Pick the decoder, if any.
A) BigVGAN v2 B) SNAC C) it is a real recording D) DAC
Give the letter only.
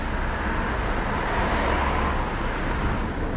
C